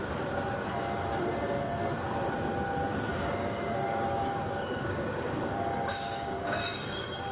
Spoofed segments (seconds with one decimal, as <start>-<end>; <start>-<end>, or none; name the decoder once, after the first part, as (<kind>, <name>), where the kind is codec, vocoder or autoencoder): 3.1-7.3 (codec, DAC)